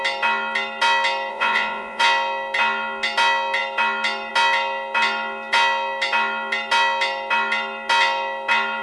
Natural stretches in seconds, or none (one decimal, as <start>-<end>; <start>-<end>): 0.0-1.3; 2.0-8.8